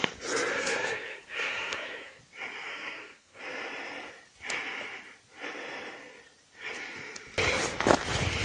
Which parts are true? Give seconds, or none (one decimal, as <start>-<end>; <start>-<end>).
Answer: 0.0-0.5; 2.2-2.7; 3.4-8.4